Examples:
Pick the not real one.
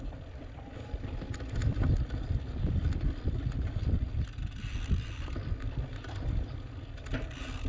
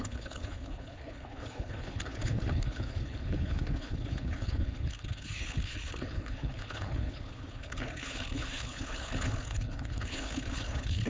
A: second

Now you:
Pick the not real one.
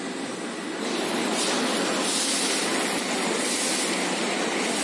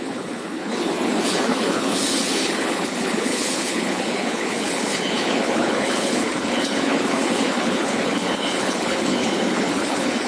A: second